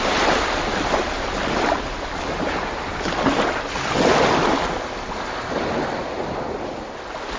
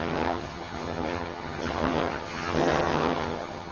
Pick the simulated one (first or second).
second